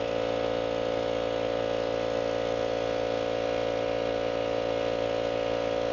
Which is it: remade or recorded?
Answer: recorded